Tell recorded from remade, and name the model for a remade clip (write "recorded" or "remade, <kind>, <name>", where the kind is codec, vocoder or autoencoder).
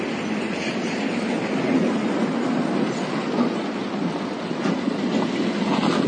recorded